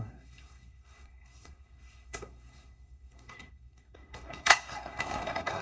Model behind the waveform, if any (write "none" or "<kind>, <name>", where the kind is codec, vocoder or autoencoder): codec, SNAC